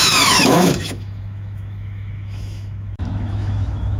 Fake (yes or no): yes